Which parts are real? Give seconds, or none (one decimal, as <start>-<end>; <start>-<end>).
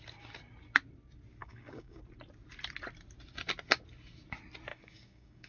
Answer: 0.0-1.4; 2.0-4.7